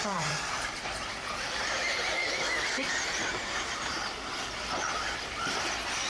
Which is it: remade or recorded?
remade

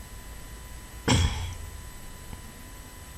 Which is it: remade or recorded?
recorded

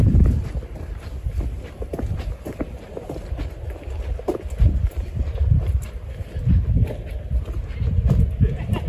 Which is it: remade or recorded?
recorded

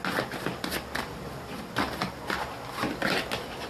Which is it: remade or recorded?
recorded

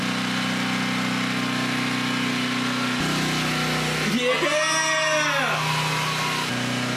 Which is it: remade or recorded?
recorded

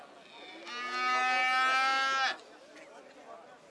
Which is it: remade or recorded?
recorded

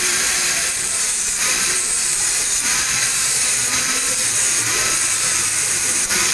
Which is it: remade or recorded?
remade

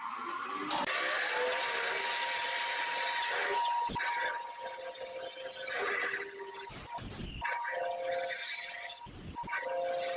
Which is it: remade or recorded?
recorded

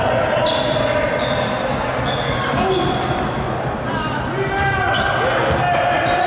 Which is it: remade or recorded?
recorded